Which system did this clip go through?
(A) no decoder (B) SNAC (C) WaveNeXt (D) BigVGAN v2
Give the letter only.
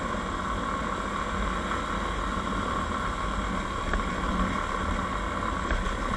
A